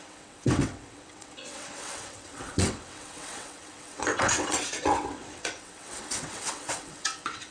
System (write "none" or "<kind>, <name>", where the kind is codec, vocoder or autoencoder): vocoder, WaveNeXt